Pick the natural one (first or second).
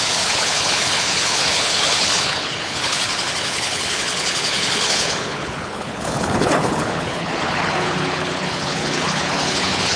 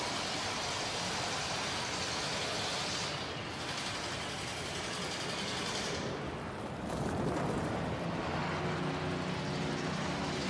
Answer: second